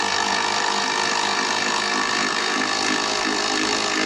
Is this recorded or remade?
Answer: recorded